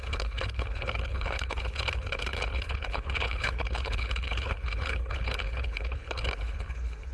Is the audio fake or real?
fake